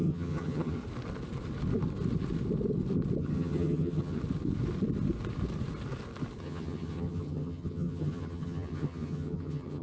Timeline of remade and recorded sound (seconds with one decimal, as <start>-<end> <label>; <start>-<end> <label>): 0.0-0.8 remade; 0.8-3.2 recorded; 3.2-4.2 remade; 4.2-6.4 recorded; 6.4-9.8 remade